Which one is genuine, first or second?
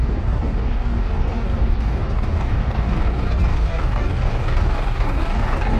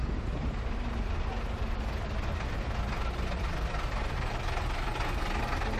second